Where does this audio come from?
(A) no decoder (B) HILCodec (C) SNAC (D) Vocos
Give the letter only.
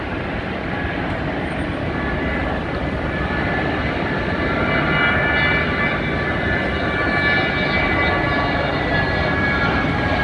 A